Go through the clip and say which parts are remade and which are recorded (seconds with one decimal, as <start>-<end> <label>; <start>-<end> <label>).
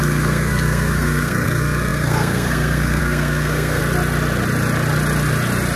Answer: 0.0-3.8 remade; 3.8-5.8 recorded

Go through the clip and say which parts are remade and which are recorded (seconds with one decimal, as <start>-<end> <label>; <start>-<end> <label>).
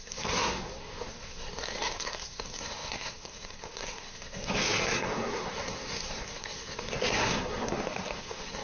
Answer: 0.0-8.6 remade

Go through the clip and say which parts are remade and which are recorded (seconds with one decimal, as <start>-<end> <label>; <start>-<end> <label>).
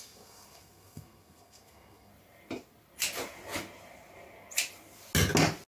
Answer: 0.0-2.1 remade; 2.1-5.7 recorded